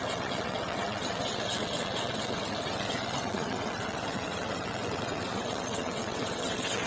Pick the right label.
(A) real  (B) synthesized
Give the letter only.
B